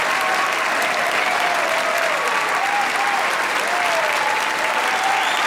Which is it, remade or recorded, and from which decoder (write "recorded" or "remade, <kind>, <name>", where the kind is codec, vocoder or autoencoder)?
recorded